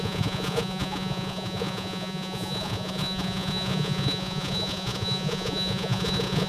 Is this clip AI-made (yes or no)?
yes